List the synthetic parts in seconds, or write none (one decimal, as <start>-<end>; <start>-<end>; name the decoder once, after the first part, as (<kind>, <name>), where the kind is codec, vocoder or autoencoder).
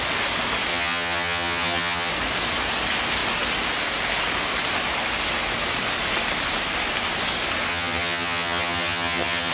0.7-2.1 (vocoder, HiFi-GAN); 7.7-9.5